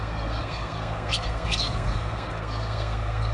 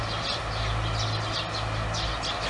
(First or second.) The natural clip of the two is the second